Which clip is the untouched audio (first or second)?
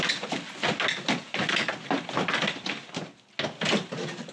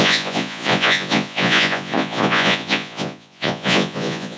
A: first